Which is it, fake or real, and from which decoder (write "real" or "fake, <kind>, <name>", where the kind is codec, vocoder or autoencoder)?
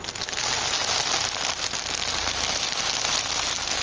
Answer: real